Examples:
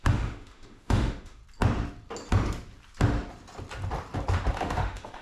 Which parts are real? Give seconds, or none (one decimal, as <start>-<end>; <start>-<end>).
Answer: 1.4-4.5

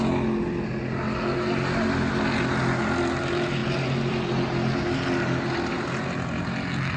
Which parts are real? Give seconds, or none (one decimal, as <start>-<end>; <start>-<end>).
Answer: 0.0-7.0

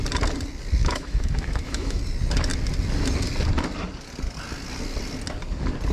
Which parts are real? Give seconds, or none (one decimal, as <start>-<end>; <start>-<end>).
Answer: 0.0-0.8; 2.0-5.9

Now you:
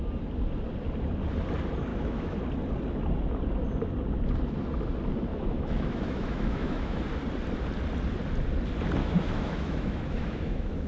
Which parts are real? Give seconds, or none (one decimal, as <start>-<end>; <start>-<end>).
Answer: 0.0-1.9; 2.4-5.3; 7.0-9.0

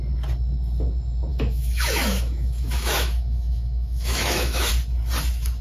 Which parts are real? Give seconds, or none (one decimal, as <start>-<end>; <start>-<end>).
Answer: 0.0-1.3; 4.7-5.6

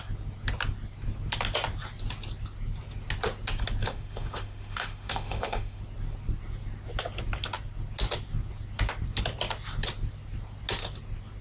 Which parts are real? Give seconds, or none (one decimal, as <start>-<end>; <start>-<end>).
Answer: 0.0-3.8; 5.8-11.4

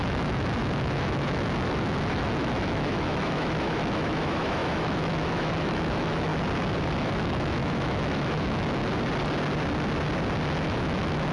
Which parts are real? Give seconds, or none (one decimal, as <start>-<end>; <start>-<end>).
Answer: 6.3-7.1; 8.8-10.5

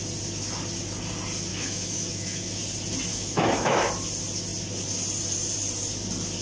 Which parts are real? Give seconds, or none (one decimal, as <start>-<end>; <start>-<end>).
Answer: 0.0-1.5; 2.6-3.1; 3.9-6.4